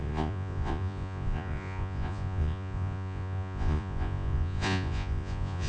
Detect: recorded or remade remade